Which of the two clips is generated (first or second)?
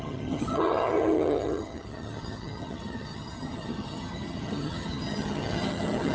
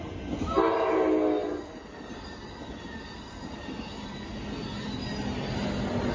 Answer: first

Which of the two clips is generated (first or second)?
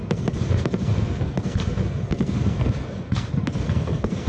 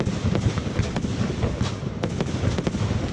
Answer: first